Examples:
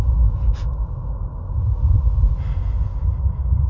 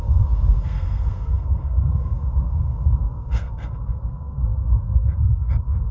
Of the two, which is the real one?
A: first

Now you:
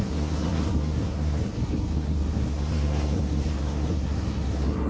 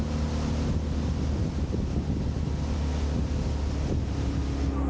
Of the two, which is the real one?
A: second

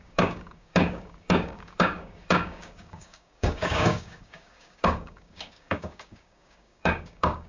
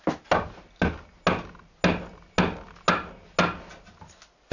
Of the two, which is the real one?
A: second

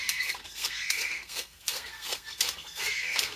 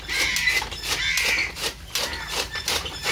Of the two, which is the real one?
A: second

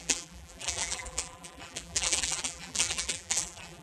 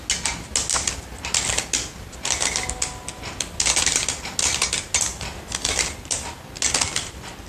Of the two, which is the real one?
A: second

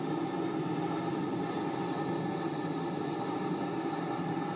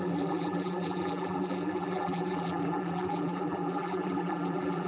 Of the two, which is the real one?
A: first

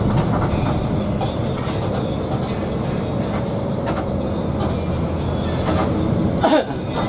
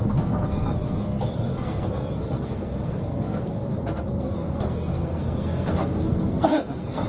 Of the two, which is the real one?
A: first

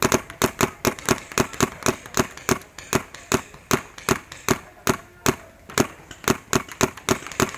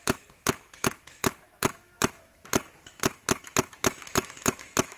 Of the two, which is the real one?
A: first